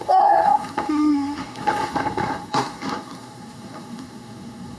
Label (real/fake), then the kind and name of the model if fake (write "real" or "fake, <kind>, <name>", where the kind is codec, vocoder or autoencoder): fake, codec, SNAC